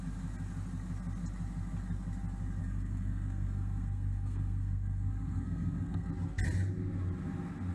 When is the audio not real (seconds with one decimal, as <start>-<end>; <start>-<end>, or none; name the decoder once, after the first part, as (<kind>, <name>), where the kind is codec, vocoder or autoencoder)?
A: 2.6-6.1 (codec, SNAC)